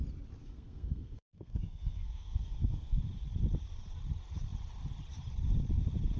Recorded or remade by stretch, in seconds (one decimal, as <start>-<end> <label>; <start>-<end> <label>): 0.0-0.4 recorded; 0.4-3.0 remade; 3.0-6.2 recorded